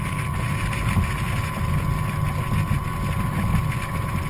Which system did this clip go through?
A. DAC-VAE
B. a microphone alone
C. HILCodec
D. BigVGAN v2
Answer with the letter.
B